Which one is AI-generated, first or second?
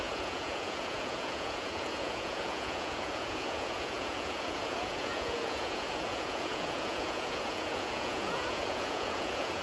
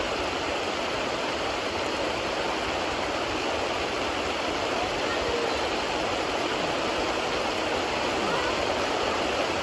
first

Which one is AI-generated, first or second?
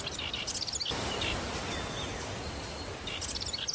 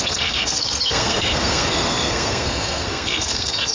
second